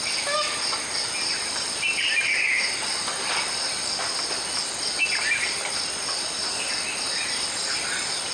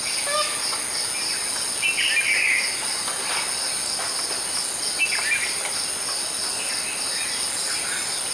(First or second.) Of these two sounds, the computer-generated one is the first